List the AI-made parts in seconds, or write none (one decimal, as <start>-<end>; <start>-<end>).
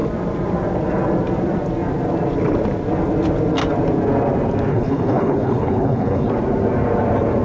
4.7-6.3